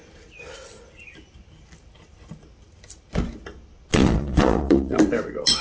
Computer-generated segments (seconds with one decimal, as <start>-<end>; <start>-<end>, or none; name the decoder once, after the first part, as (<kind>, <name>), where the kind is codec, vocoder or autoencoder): 3.9-5.0 (vocoder, Vocos)